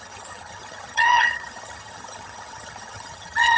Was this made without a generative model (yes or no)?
no